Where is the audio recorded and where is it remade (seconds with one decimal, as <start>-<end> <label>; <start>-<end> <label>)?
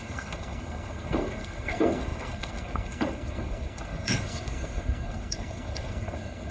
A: 0.0-6.5 remade